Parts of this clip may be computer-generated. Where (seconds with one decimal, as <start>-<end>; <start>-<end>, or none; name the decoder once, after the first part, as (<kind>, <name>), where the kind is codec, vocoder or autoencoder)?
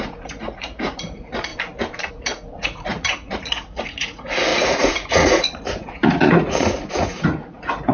0.0-1.5 (vocoder, Vocos); 2.1-7.9